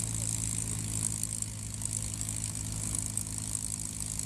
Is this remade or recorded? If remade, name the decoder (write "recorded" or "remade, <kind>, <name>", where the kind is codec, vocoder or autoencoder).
recorded